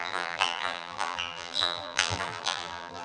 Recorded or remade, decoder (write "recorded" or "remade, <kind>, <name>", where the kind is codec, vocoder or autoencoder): remade, vocoder, BigVGAN v2